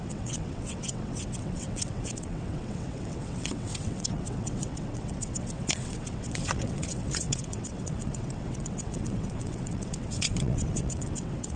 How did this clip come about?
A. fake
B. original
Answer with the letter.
A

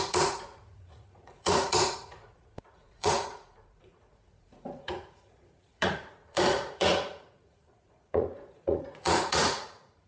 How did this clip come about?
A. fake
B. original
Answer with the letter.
A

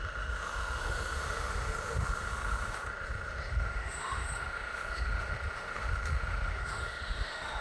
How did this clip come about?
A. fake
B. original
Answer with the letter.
A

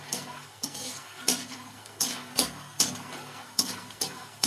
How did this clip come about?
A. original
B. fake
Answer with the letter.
B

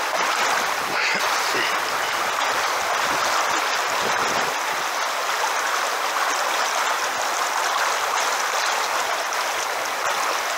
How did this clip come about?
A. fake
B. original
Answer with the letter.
B